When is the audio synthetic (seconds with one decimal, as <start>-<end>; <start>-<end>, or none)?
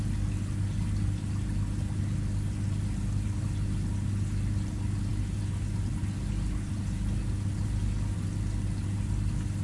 none